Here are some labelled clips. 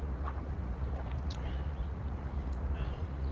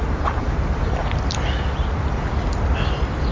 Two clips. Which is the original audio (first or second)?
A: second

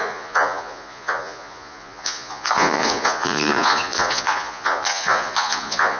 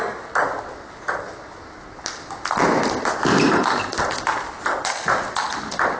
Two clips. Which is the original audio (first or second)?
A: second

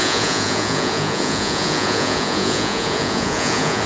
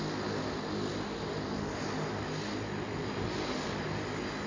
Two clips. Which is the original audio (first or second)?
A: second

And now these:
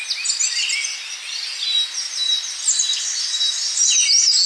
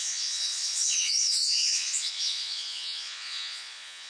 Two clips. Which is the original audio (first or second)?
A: first